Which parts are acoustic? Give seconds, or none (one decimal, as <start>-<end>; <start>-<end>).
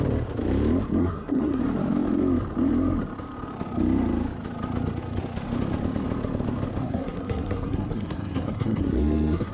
0.0-1.0; 1.6-6.8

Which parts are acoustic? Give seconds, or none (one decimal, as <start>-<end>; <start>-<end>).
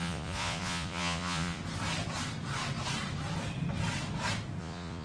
1.6-4.6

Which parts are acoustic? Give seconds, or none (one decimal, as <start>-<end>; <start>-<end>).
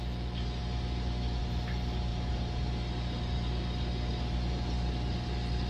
0.0-5.7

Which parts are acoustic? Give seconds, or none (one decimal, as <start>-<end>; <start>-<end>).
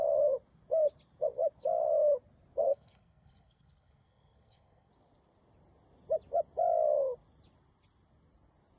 0.0-2.6; 4.9-8.8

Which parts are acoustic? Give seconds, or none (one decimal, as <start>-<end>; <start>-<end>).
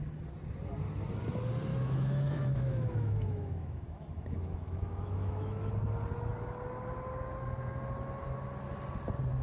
0.0-1.7; 5.7-9.4